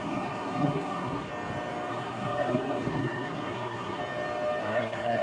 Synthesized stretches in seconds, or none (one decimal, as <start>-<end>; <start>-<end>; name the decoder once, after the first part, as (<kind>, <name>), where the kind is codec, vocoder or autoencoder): 0.0-1.3 (codec, SNAC); 1.9-4.0; 4.6-5.2